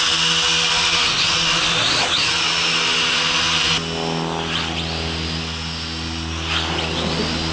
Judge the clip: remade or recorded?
recorded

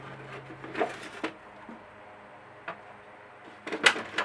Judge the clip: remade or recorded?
recorded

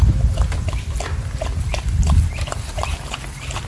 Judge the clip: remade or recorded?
recorded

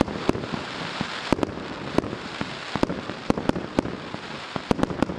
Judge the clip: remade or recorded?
remade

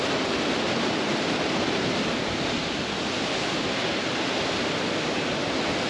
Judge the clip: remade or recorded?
recorded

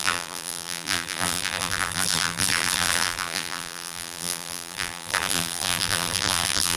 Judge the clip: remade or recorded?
remade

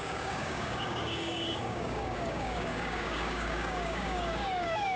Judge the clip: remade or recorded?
remade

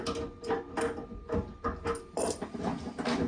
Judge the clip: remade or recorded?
recorded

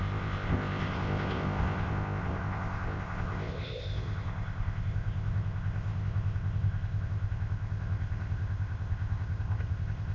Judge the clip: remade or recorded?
remade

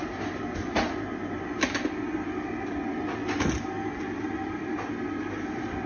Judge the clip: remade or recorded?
recorded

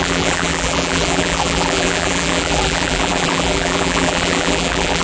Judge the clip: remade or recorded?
remade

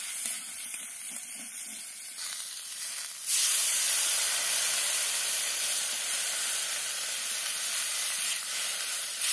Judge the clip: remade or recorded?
recorded